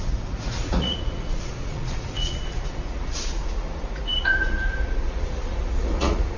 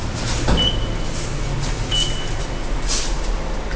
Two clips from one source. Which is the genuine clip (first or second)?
second